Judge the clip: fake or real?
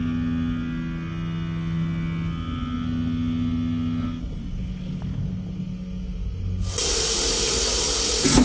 real